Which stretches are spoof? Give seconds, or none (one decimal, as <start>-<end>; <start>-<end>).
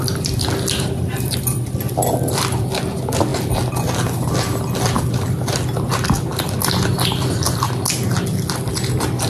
none